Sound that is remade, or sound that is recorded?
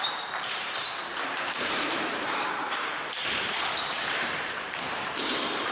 remade